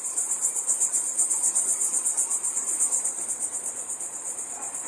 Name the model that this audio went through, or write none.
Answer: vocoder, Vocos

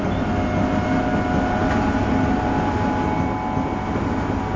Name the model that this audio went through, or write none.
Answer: none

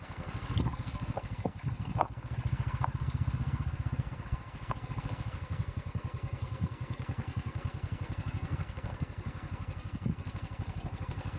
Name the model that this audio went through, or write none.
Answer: codec, SNAC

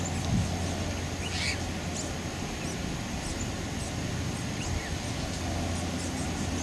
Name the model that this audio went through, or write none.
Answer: none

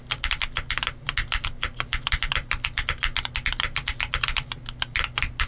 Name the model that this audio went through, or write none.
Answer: none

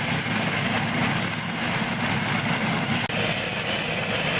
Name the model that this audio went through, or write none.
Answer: none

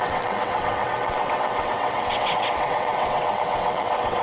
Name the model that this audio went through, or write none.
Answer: vocoder, WaveNeXt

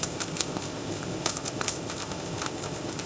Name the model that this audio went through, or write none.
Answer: codec, ZipCodec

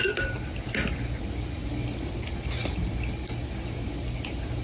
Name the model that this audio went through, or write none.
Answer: none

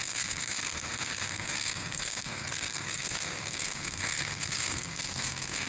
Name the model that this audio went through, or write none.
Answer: codec, SNAC